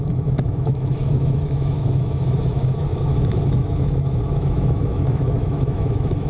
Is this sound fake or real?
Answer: fake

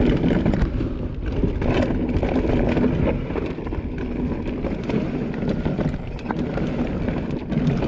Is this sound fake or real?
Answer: real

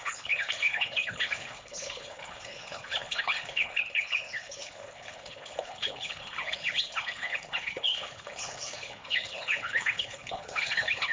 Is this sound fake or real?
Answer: fake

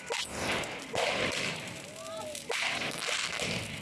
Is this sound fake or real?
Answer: real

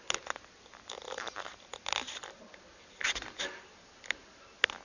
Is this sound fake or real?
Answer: real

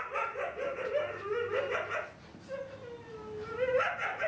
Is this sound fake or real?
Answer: real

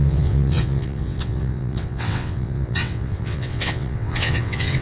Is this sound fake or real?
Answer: fake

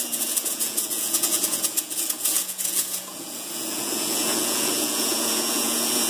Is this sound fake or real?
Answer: fake